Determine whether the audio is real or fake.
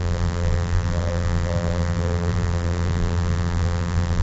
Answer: fake